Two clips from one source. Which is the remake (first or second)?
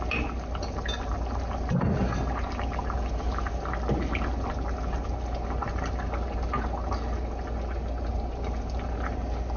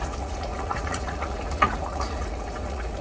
second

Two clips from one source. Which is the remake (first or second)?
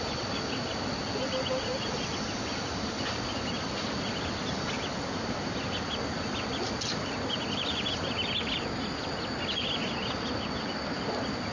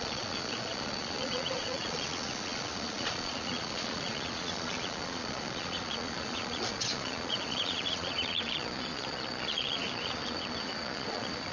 second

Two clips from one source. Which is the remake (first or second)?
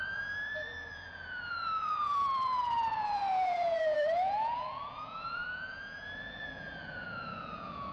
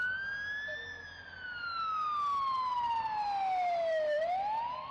first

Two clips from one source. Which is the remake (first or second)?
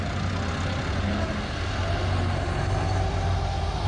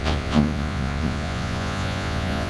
second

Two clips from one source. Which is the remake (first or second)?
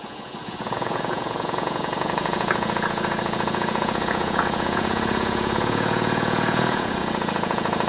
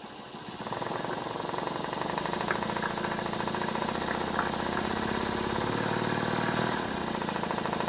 first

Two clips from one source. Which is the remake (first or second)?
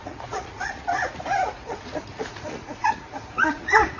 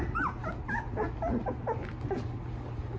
first